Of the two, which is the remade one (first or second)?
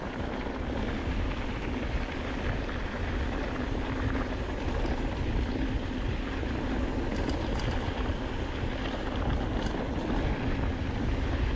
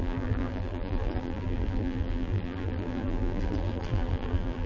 second